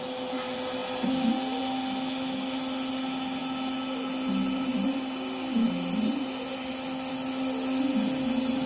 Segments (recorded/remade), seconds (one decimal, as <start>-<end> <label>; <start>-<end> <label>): 0.0-8.7 recorded